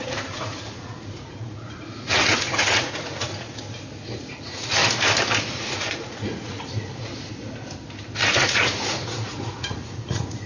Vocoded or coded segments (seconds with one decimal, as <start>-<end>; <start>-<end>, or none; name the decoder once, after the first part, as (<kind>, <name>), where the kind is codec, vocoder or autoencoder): 0.0-3.5 (vocoder, Vocos); 4.2-4.8; 5.5-7.1; 8.3-10.5